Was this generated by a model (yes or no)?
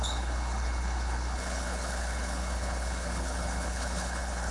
yes